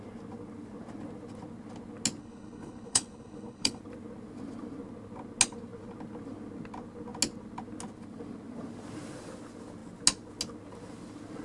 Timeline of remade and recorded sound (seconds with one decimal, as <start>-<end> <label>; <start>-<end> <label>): 0.0-2.2 recorded; 2.2-3.8 remade; 3.8-11.4 recorded